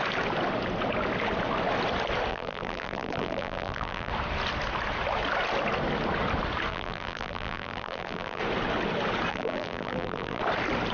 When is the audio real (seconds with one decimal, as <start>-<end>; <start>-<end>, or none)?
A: 0.0-2.3; 4.1-6.7; 8.4-9.3; 10.4-10.9